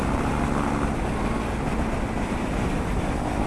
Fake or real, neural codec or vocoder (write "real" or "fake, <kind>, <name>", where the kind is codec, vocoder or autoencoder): real